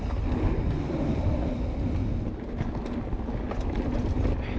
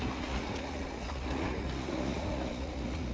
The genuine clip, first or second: first